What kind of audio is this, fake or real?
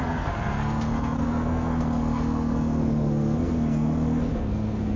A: fake